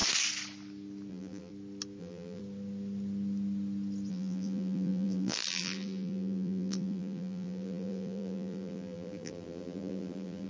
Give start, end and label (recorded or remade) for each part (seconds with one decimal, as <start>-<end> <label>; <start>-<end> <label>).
0.0-1.1 recorded; 1.1-1.5 remade; 1.5-2.0 recorded; 2.0-2.4 remade; 2.4-4.1 recorded; 4.1-10.5 remade